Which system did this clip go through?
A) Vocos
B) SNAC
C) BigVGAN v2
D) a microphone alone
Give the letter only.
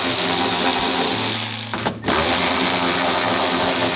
D